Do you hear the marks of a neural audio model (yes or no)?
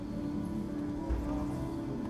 no